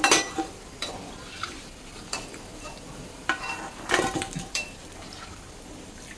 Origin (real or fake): fake